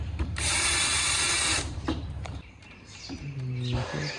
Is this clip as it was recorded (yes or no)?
no